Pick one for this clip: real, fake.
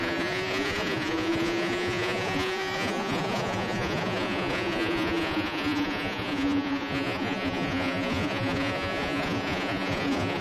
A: fake